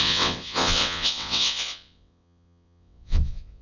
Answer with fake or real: fake